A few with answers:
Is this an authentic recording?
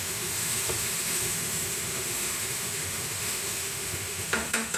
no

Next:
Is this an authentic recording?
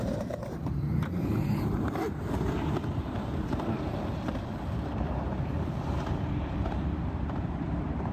no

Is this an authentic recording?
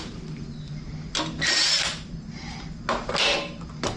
yes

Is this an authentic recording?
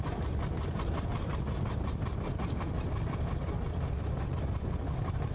yes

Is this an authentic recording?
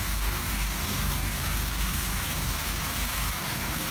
no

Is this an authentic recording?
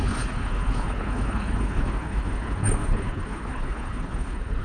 no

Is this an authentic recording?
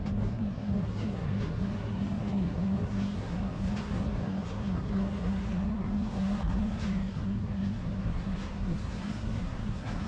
no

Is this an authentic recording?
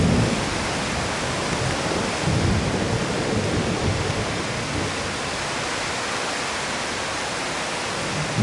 yes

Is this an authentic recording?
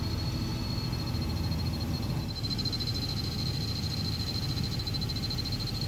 yes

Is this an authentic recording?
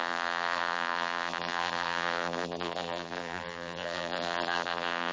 no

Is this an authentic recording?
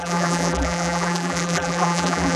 no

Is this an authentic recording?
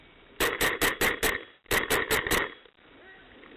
yes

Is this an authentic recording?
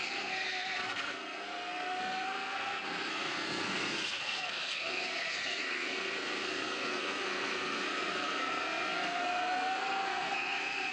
no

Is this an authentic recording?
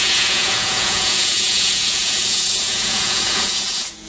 no